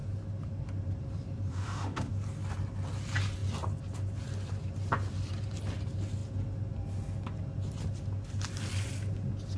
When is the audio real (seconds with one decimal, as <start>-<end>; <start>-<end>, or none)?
0.0-1.5; 2.1-9.6

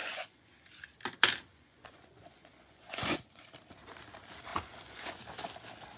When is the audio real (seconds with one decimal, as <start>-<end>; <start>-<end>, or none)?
0.7-1.5; 3.5-4.5; 5.2-6.0

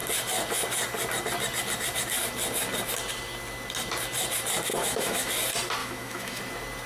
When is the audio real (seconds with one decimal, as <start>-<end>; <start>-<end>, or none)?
0.0-4.7; 5.3-5.8; 6.4-6.9

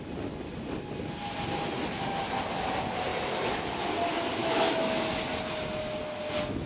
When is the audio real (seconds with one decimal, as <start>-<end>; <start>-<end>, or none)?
0.0-3.1; 3.7-4.4; 5.0-6.7

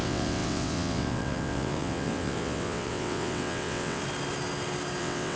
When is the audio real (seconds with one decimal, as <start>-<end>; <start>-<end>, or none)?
4.0-5.0